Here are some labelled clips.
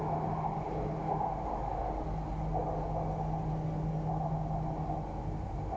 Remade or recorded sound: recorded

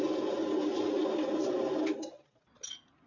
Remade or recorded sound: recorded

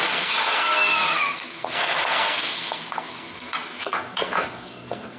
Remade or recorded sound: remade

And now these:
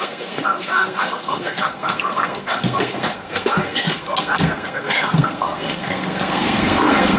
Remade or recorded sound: remade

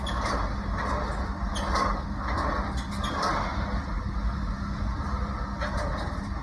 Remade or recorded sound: recorded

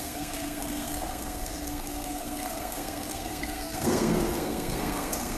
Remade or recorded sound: remade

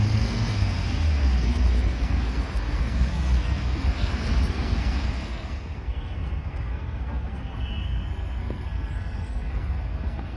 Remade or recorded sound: remade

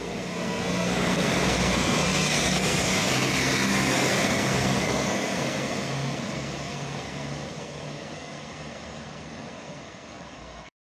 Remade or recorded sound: remade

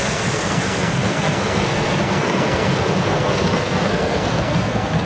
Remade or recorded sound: remade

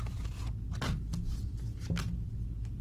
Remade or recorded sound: recorded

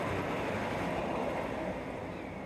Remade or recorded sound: recorded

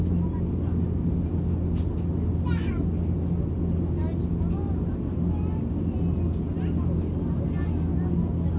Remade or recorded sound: recorded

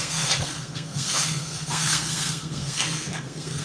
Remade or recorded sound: remade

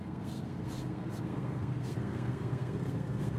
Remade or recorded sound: remade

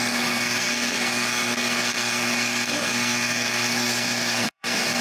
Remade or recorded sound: remade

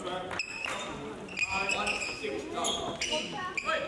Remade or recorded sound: recorded